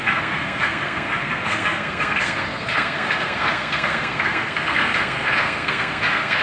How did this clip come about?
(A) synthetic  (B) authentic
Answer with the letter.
A